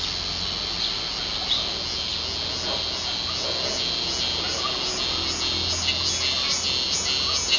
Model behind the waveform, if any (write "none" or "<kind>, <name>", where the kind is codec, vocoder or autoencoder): none